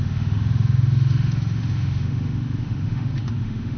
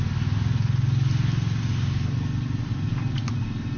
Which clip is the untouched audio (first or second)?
second